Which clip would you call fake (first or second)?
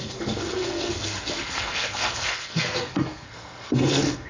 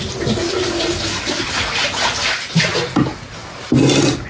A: first